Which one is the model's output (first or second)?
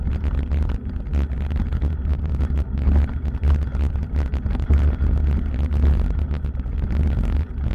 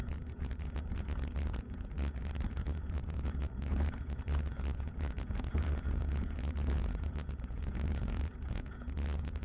second